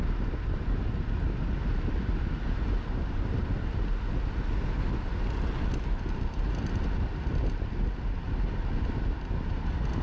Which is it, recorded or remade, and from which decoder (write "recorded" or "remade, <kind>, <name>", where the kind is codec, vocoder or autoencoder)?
recorded